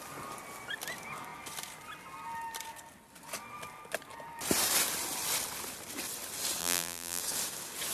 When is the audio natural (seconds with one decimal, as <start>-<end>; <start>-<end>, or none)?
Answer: 0.0-6.6; 7.2-7.9